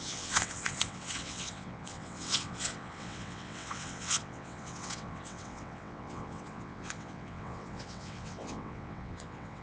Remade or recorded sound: remade